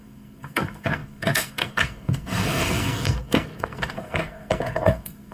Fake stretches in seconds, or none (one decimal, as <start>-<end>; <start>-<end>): 0.0-5.3